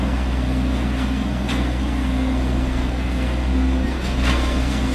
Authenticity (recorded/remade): remade